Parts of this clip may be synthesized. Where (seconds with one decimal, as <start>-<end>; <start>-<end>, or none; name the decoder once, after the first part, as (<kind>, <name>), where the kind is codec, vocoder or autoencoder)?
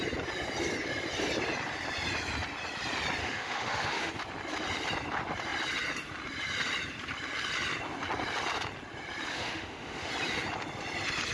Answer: 3.2-4.1 (autoencoder, DAC-VAE); 9.3-10.1